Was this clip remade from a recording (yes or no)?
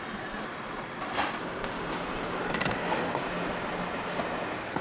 no